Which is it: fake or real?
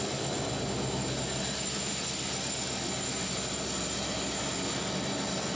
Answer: real